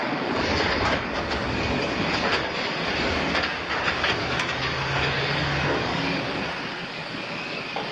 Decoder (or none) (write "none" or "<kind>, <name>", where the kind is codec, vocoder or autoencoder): codec, DAC